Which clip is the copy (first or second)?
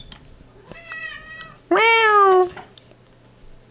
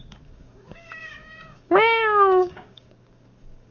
second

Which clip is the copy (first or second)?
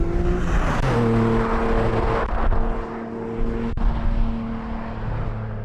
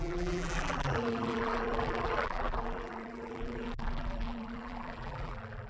second